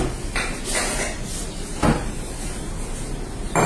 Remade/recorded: recorded